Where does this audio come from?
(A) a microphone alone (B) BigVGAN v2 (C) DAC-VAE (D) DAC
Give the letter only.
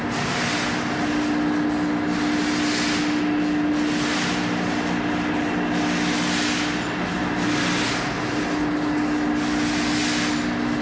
A